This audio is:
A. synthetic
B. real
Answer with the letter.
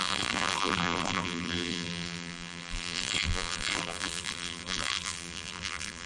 A